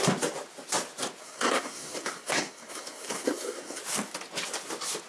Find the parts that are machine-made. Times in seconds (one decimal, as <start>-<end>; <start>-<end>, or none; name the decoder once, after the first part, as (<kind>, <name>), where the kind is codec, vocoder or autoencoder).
1.2-3.8 (codec, SNAC)